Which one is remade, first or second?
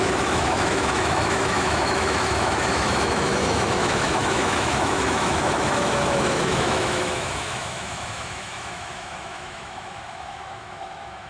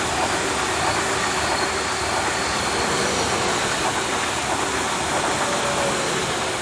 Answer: first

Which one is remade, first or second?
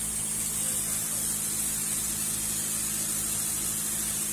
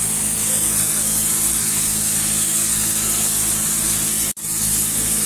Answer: second